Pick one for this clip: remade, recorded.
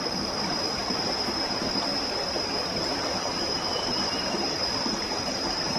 remade